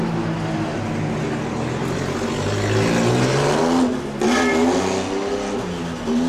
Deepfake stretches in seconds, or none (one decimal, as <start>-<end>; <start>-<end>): none